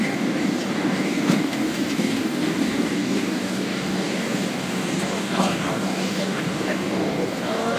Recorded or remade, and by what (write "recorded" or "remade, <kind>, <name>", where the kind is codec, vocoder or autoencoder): remade, codec, DAC